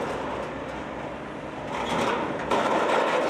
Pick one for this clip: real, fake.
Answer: real